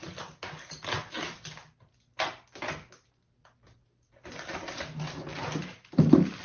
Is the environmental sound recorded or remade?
recorded